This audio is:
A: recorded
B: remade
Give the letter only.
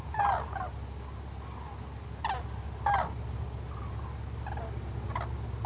A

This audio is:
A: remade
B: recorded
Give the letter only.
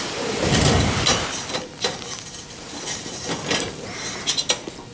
B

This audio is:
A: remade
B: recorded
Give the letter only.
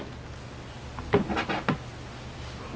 B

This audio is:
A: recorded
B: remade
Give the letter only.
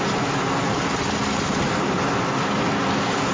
A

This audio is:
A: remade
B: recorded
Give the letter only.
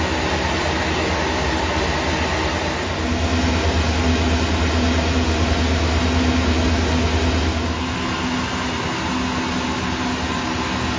B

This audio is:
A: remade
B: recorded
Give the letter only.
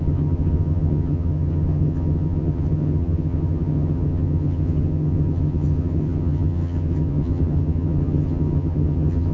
A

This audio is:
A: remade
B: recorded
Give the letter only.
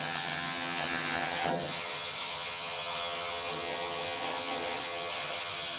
A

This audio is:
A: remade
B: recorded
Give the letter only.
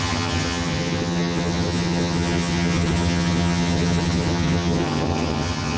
A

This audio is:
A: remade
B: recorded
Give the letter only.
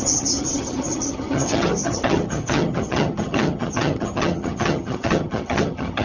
A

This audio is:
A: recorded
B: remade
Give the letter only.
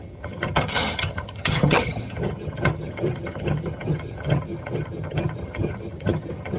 B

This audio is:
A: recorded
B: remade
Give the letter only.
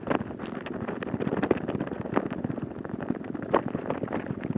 A